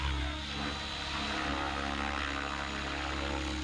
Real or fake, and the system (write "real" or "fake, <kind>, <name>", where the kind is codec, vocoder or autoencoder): real